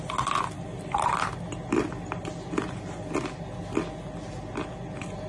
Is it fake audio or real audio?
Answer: real